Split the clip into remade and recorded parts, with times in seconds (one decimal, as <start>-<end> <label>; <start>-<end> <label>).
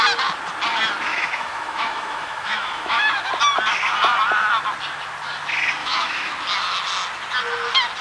0.0-1.1 recorded; 1.1-3.3 remade; 3.3-5.8 recorded; 5.8-6.3 remade; 6.3-8.0 recorded